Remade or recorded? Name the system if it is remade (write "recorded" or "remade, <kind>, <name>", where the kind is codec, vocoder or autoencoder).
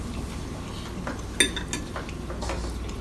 recorded